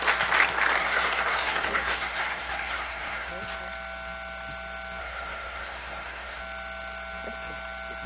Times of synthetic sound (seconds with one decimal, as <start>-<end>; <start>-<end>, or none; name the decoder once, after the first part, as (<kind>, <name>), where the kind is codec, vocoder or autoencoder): 0.8-3.3 (codec, SNAC); 5.0-6.4